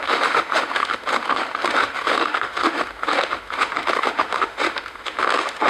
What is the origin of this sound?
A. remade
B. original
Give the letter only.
A